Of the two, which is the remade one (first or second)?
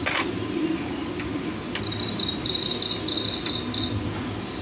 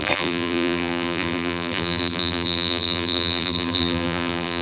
second